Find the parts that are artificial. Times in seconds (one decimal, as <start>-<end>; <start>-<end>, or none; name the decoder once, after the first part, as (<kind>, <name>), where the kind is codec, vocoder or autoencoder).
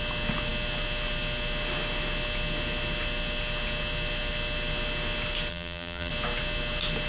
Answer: 5.5-6.1 (vocoder, BigVGAN v2)